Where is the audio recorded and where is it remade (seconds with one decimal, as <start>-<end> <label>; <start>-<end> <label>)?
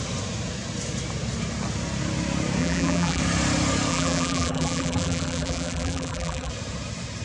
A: 0.0-2.6 recorded; 2.6-3.2 remade; 3.2-3.9 recorded; 3.9-6.5 remade; 6.5-7.2 recorded